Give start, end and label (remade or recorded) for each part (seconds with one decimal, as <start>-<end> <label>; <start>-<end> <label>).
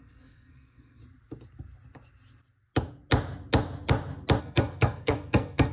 0.0-1.0 remade; 1.0-4.4 recorded; 4.4-5.7 remade